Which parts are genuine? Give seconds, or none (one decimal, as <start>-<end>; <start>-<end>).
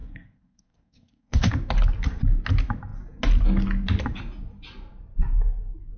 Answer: 1.5-6.0